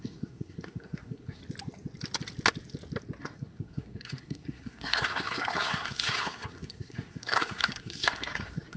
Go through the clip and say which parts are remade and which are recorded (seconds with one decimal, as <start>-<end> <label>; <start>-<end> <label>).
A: 0.0-1.4 remade; 1.4-3.2 recorded; 3.2-8.8 remade